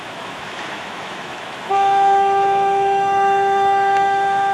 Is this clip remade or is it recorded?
remade